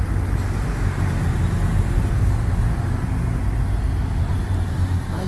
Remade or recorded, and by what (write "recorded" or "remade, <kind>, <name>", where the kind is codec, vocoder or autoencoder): recorded